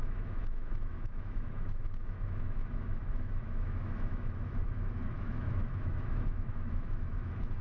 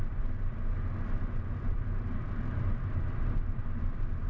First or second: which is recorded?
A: second